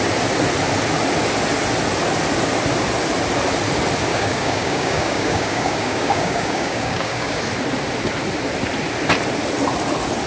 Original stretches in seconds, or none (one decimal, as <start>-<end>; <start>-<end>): 0.0-4.1; 7.4-10.3